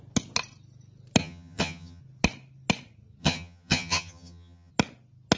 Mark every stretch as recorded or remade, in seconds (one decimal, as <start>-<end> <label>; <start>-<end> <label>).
0.0-1.2 recorded; 1.2-2.0 remade; 2.0-3.2 recorded; 3.2-4.7 remade; 4.7-5.4 recorded